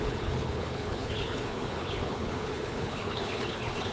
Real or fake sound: fake